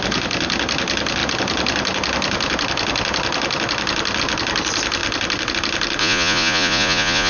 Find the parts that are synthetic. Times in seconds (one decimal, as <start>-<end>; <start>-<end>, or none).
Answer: 6.0-7.3